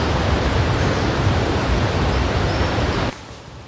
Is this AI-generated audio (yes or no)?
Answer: yes